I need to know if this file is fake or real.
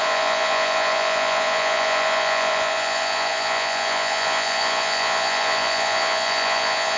fake